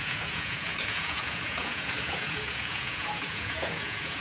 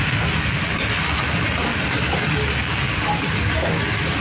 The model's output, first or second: first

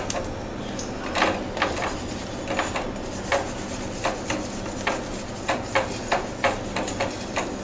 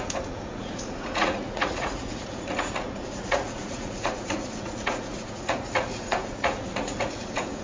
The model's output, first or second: second